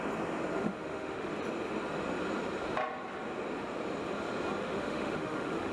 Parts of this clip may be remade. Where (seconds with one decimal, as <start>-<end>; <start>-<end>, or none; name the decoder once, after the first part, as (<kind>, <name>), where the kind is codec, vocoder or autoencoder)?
0.6-1.3 (autoencoder, DAC-VAE); 4.6-5.7